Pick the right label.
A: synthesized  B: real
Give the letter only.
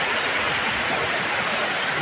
A